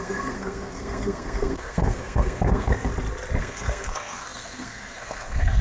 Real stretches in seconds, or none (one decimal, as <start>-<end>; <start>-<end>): 2.9-3.4

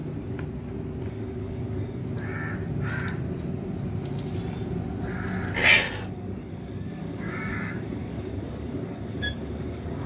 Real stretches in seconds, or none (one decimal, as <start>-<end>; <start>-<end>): 0.0-1.1; 2.0-6.1

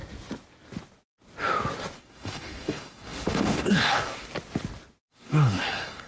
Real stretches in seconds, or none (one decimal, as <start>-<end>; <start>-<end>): 0.0-2.0; 4.3-5.0

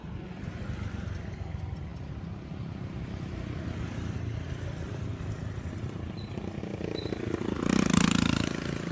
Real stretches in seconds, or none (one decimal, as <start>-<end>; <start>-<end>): 0.0-8.9